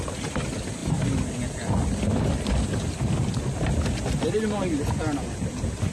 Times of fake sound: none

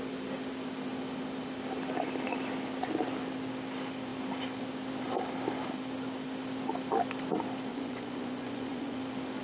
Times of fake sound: 7.7-9.0 (vocoder, Vocos)

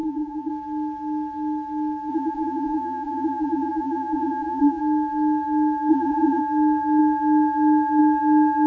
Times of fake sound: 0.0-0.5 (vocoder, Vocos); 2.1-4.8; 5.9-6.4

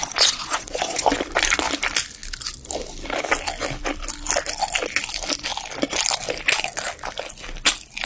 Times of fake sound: 0.0-1.1 (vocoder, Vocos)

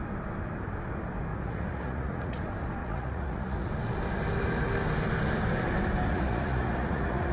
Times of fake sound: 1.3-2.4 (vocoder, Vocos); 2.8-3.7; 6.1-7.3

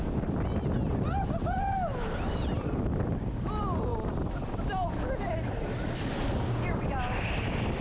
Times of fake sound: none